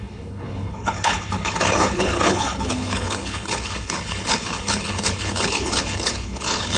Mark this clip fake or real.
fake